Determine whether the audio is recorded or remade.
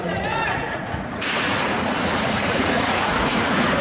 remade